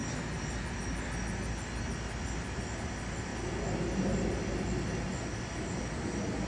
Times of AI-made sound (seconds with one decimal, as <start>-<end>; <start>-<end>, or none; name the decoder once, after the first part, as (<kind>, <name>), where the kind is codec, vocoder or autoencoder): none